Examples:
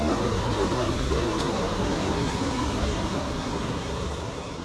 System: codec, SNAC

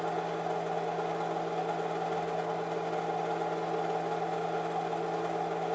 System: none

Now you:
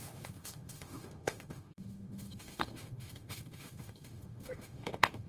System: autoencoder, DAC-VAE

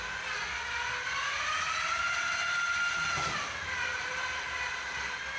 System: none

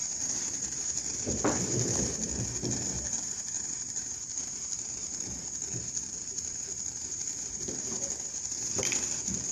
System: none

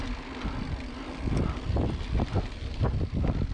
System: none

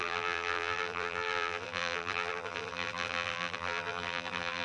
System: vocoder, BigVGAN v2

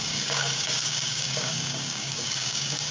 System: codec, DAC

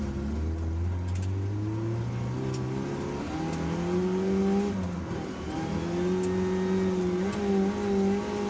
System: none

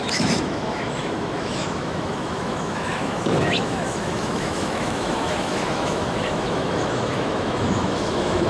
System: autoencoder, DAC-VAE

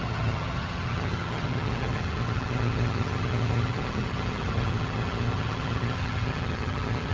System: vocoder, HiFi-GAN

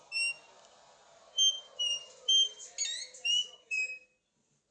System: none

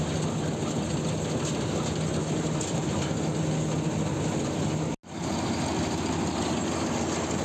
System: none